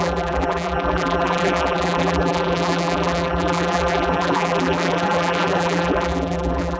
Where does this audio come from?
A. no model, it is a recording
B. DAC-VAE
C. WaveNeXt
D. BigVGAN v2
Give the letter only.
D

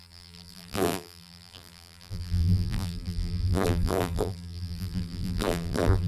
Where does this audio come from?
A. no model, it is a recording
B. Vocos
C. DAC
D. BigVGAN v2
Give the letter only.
D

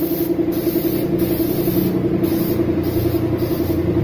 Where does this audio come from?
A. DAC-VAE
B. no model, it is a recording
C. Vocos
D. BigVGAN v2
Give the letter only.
B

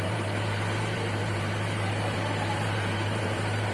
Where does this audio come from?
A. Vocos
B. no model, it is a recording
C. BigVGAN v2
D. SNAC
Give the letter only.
C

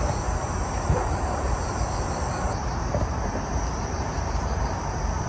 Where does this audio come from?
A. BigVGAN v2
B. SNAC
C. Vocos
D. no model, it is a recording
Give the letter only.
A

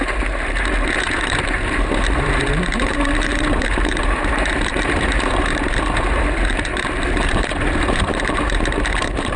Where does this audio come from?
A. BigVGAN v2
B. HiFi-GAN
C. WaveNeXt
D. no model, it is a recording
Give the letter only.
A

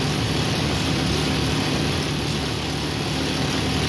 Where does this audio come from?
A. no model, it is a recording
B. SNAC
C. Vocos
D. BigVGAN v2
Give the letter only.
A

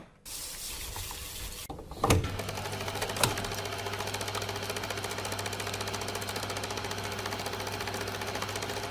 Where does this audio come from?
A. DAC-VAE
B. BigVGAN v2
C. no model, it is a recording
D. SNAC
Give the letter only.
C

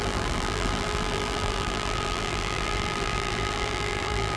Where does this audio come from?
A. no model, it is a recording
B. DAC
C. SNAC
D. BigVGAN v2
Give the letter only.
D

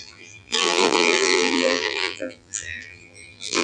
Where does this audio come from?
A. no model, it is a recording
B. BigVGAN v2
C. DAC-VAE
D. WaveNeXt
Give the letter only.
B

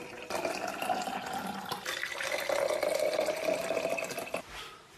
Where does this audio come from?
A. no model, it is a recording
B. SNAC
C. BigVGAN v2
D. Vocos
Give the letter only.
A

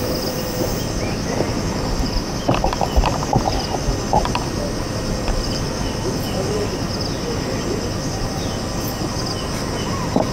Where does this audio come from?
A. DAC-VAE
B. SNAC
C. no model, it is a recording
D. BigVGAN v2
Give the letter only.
C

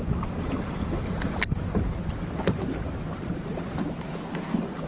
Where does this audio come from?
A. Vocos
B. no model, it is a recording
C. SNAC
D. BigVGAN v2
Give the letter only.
D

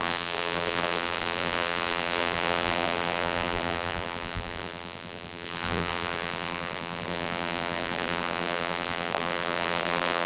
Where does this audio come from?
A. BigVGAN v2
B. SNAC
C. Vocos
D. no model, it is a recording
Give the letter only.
A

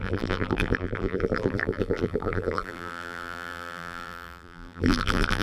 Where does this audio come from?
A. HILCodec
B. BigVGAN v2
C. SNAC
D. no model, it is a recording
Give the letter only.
B